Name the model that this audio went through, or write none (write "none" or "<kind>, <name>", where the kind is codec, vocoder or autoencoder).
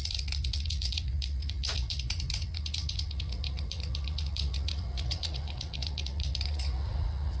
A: vocoder, Vocos